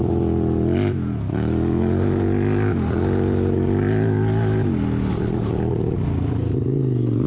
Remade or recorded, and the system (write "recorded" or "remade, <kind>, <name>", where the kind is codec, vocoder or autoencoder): recorded